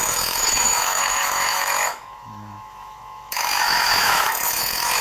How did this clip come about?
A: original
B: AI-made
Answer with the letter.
B